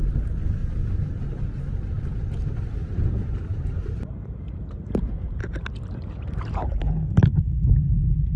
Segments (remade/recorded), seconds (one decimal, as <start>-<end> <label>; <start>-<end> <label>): 0.0-0.6 recorded; 0.6-1.6 remade; 1.6-2.8 recorded; 2.8-7.2 remade; 7.2-8.4 recorded